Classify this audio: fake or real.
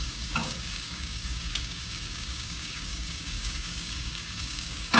fake